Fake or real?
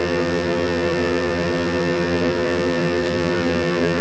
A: fake